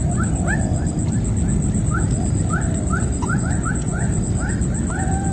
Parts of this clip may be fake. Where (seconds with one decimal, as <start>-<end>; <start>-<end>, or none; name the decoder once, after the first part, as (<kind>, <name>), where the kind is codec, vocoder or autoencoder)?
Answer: 3.1-4.2 (vocoder, Vocos)